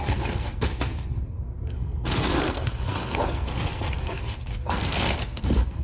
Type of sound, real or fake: fake